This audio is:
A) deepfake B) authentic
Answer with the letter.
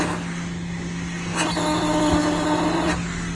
B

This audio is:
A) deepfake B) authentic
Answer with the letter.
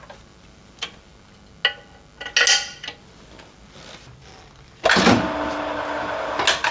B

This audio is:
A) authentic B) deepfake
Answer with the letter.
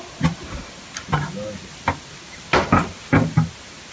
A